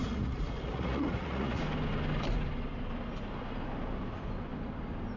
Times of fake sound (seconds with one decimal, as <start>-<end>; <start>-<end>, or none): 0.0-1.6